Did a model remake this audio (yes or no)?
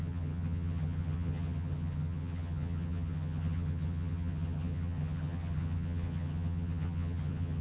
yes